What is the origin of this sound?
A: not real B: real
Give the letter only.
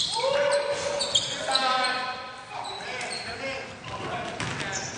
B